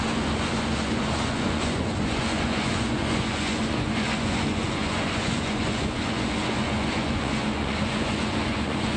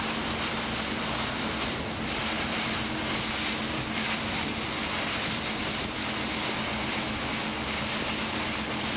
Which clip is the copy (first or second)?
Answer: first